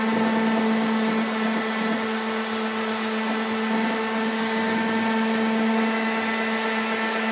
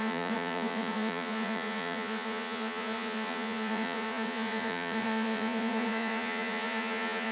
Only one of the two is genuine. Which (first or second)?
first